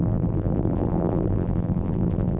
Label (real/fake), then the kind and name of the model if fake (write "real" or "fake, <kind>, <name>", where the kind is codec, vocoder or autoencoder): fake, vocoder, BigVGAN v2